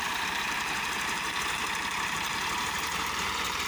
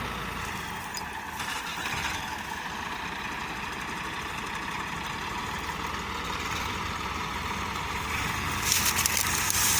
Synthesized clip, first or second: first